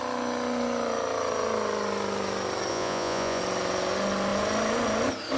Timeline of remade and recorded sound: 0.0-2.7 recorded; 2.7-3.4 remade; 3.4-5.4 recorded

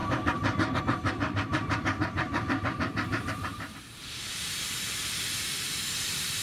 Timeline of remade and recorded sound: 0.0-6.4 remade

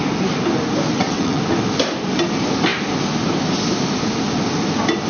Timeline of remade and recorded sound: 0.0-0.9 recorded; 0.9-1.4 remade; 1.4-5.1 recorded

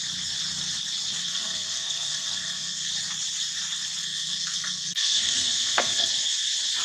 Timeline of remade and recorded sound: 0.0-1.2 recorded; 1.2-2.9 remade; 2.9-4.0 recorded; 4.0-6.1 remade; 6.1-6.8 recorded

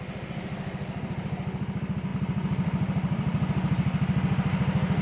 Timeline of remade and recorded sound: 0.0-5.0 recorded